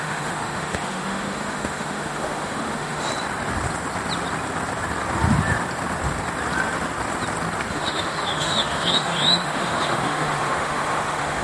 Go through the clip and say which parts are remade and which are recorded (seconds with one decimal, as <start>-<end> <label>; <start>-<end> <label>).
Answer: 0.0-3.1 remade; 3.1-7.7 recorded; 7.7-11.4 remade

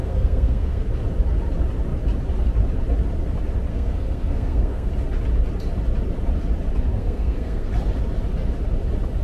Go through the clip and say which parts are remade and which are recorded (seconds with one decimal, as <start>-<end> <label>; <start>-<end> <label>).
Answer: 0.0-0.9 remade; 0.9-3.7 recorded; 3.7-4.9 remade; 4.9-6.9 recorded; 6.9-7.7 remade; 7.7-9.2 recorded

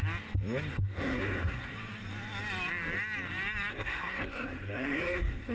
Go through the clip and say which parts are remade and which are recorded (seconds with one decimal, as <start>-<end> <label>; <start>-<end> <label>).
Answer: 0.0-0.7 recorded; 0.7-1.7 remade; 1.7-3.7 recorded; 3.7-5.5 remade

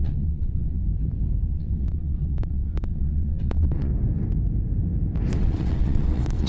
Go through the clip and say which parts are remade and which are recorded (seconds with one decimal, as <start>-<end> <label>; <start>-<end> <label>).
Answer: 0.0-0.8 remade; 0.8-1.5 recorded; 1.5-3.9 remade; 3.9-5.4 recorded; 5.4-6.5 remade

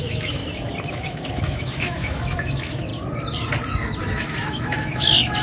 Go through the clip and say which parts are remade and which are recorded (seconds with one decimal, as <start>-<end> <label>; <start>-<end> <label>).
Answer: 0.0-0.4 remade; 0.4-0.9 recorded; 0.9-2.9 remade; 2.9-4.0 recorded; 4.0-5.4 remade

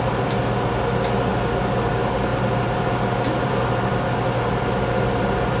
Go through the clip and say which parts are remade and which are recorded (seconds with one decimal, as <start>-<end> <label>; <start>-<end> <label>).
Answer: 0.0-5.6 recorded